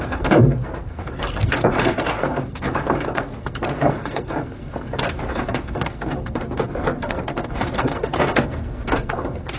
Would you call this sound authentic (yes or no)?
no